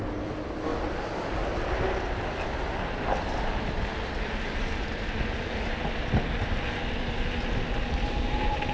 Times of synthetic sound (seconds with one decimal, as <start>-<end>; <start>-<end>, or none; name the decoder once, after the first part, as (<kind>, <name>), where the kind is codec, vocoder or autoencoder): none